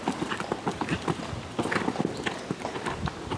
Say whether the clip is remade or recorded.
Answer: recorded